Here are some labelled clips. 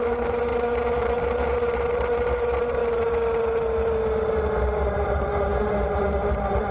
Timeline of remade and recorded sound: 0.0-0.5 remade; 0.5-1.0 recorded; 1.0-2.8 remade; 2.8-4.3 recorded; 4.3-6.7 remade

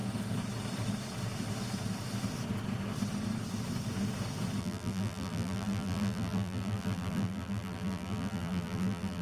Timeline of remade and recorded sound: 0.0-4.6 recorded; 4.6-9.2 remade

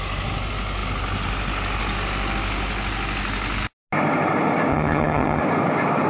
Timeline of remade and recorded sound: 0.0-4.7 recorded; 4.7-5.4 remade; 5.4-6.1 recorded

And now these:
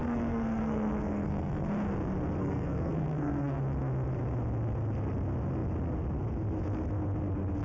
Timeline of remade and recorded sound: 0.0-1.7 remade; 1.7-2.4 recorded; 2.4-3.6 remade; 3.6-7.6 recorded

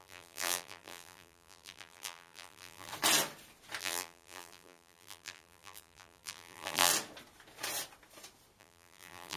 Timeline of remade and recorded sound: 0.0-2.9 remade; 2.9-3.8 recorded; 3.8-6.9 remade; 6.9-8.6 recorded; 8.6-9.4 remade